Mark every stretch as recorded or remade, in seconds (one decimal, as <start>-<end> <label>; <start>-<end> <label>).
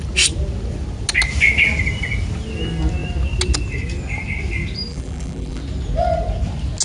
0.0-4.9 recorded; 4.9-5.6 remade; 5.6-6.8 recorded